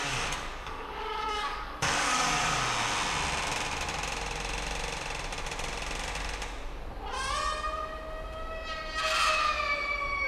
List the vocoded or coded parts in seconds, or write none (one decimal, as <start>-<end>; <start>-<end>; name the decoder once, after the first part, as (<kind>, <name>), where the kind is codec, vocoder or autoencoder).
0.0-2.6 (codec, DAC)